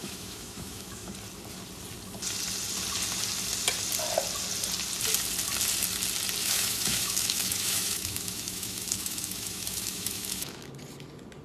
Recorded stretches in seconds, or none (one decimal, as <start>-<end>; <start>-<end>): 1.1-6.4; 10.7-11.4